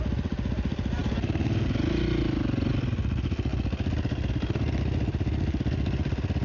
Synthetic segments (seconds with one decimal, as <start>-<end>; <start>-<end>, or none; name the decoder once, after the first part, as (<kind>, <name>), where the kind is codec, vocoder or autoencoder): none